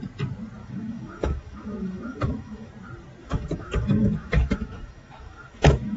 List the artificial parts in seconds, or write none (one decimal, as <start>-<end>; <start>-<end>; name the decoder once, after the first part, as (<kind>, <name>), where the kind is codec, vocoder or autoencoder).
0.6-2.7 (autoencoder, DAC-VAE); 3.2-6.0